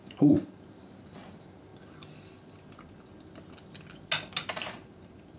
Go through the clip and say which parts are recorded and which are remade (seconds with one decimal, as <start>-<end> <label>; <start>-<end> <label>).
0.0-1.7 remade; 1.7-4.5 recorded; 4.5-5.4 remade